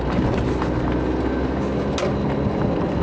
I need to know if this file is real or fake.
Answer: real